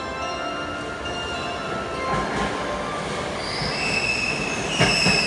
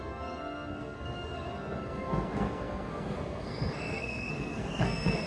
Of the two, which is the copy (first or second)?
second